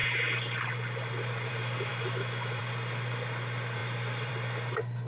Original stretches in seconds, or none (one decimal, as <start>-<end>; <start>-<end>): 0.0-1.9; 2.6-5.1